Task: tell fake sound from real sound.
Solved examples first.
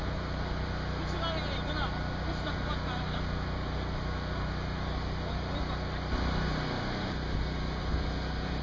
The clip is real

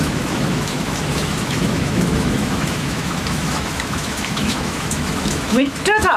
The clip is fake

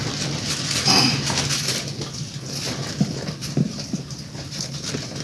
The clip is real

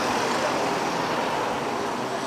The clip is real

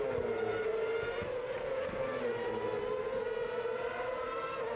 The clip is real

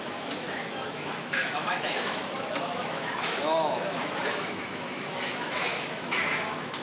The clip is fake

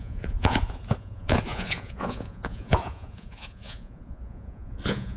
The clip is fake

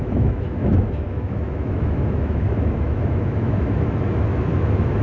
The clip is fake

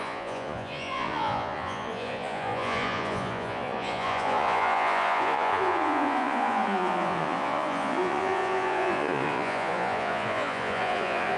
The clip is fake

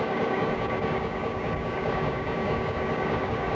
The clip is fake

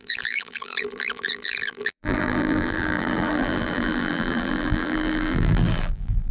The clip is fake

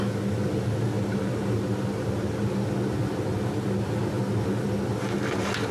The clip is real